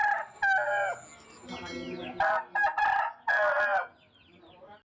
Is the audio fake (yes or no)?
no